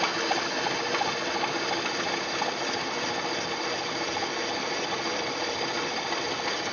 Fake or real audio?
real